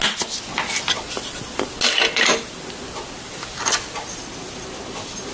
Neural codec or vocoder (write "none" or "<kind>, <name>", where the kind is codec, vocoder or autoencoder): none